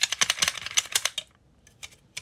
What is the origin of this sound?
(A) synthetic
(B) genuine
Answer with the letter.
B